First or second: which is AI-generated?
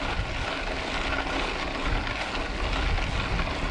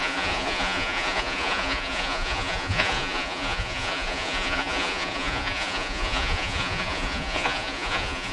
second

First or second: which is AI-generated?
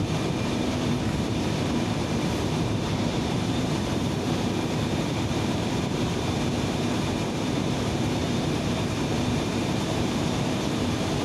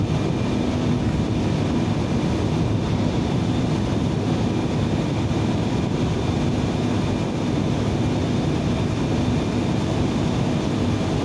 first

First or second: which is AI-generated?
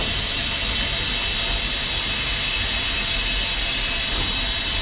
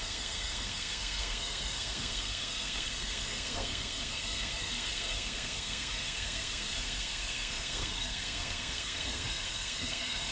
second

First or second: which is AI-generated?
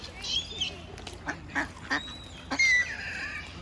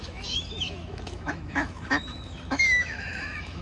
second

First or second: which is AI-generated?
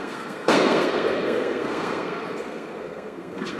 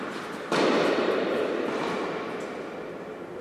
first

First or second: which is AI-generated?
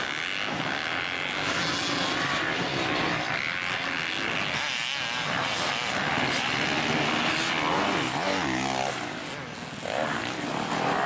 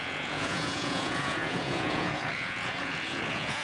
second